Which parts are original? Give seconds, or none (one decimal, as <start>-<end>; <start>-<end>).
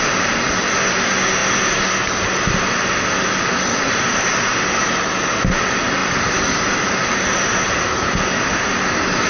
0.0-6.0; 7.6-9.3